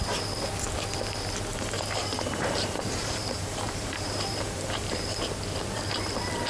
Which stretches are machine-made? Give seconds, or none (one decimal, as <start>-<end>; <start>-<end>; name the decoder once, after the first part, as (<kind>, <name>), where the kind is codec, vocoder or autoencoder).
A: 1.5-5.2 (vocoder, BigVGAN v2)